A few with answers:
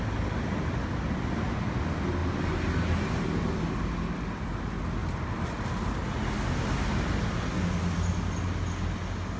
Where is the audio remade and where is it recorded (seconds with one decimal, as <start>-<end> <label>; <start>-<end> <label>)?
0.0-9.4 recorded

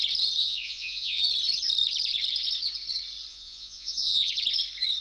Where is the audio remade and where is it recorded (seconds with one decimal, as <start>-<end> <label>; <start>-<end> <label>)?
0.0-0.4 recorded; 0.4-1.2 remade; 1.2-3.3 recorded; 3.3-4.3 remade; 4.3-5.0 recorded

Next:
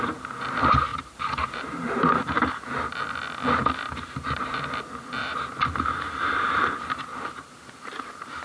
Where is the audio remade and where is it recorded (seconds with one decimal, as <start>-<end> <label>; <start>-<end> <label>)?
0.0-0.9 recorded; 0.9-2.5 remade; 2.5-5.2 recorded; 5.2-6.2 remade; 6.2-7.1 recorded; 7.1-7.7 remade; 7.7-8.4 recorded

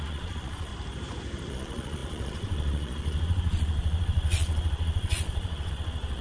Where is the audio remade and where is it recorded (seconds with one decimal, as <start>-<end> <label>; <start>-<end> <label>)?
0.0-0.7 remade; 0.7-1.5 recorded; 1.5-6.2 remade

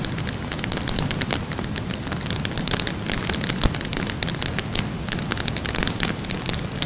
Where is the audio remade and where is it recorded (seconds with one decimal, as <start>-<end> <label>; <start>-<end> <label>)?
0.0-6.9 recorded